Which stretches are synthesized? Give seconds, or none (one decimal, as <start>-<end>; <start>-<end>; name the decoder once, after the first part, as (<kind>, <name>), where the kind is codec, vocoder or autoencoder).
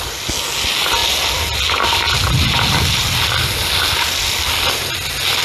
none